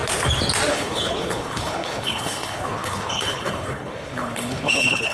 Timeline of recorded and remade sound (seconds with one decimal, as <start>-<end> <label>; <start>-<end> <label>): 0.0-0.7 recorded; 0.7-5.1 remade